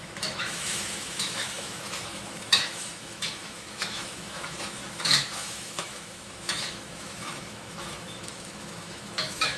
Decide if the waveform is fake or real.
fake